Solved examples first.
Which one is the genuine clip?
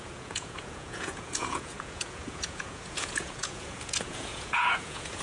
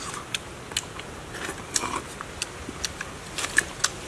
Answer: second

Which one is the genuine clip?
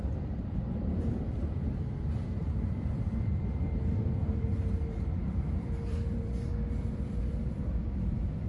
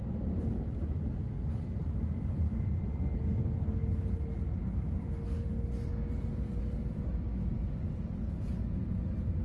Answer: second